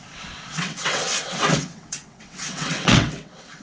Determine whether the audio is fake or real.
fake